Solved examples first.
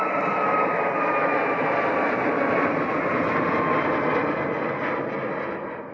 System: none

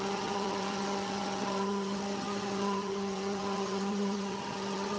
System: vocoder, HiFi-GAN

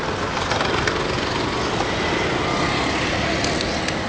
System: none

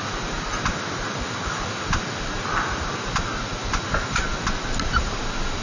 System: none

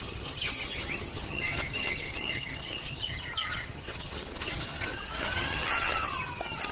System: vocoder, HiFi-GAN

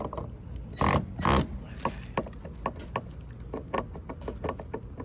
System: none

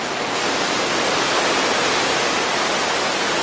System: none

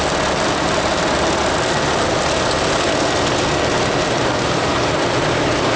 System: none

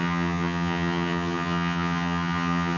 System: vocoder, HiFi-GAN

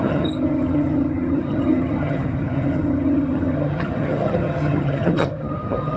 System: vocoder, HiFi-GAN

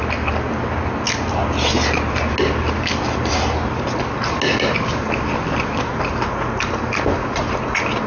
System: none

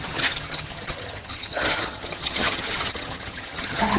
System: vocoder, HiFi-GAN